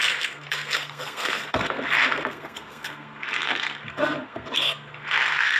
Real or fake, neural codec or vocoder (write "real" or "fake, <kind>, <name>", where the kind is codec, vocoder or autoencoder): fake, codec, SNAC